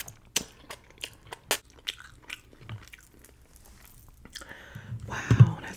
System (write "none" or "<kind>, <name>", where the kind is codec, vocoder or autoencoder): none